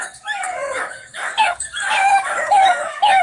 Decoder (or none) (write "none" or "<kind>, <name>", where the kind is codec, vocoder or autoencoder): codec, DAC